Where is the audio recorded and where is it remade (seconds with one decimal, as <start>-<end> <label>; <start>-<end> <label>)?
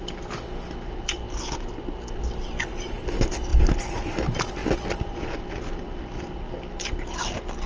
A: 0.0-7.7 recorded